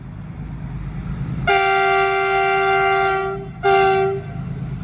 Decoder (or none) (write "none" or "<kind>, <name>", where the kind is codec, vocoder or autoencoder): none